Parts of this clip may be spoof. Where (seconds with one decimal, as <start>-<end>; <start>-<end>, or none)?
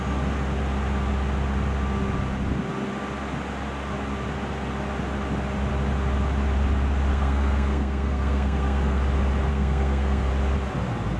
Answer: 7.1-9.0; 9.5-10.3